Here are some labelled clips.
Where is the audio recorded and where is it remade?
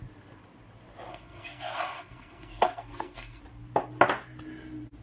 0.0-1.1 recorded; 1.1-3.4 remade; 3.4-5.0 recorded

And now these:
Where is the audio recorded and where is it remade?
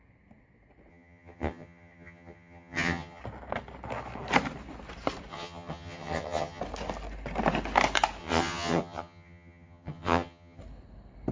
0.0-0.9 recorded; 0.9-3.2 remade; 3.2-5.3 recorded; 5.3-6.6 remade; 6.6-8.2 recorded; 8.2-10.6 remade; 10.6-11.3 recorded